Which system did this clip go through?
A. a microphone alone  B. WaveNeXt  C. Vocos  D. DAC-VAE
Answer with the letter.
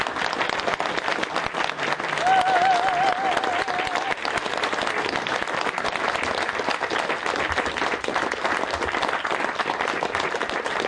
A